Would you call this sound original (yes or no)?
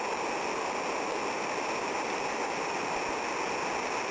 yes